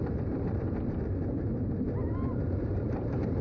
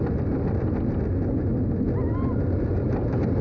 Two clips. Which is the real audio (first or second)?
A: second